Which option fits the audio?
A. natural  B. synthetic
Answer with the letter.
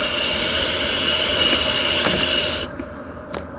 A